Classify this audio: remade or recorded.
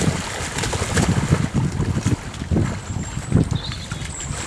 recorded